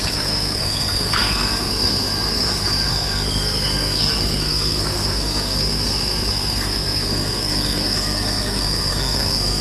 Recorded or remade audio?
remade